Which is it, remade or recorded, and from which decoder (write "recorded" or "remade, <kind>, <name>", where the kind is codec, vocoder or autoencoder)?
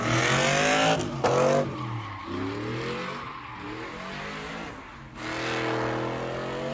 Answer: recorded